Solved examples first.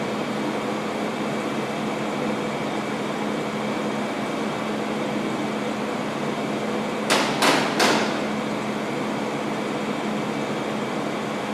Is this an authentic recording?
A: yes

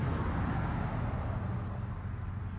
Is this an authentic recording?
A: yes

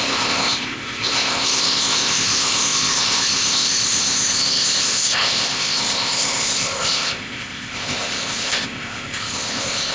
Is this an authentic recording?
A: no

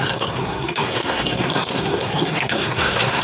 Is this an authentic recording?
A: no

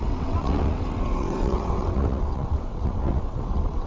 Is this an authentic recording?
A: no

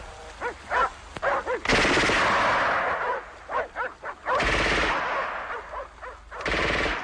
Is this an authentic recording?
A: yes